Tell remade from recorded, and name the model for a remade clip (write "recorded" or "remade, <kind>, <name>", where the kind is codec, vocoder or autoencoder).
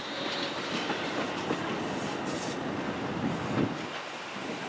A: recorded